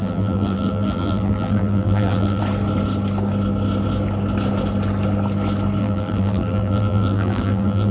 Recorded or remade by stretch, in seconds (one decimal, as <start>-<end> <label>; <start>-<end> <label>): 0.0-2.4 remade; 2.4-5.8 recorded; 5.8-7.9 remade